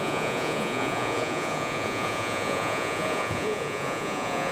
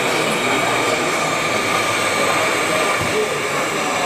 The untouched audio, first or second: second